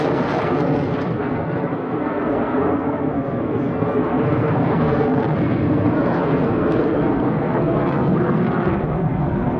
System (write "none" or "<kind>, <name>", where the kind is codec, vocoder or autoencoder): codec, SNAC